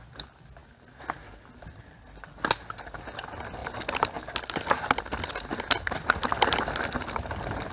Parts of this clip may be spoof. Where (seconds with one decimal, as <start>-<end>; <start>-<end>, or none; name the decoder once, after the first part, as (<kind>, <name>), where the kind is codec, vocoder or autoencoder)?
3.6-4.1 (vocoder, BigVGAN v2); 5.5-7.1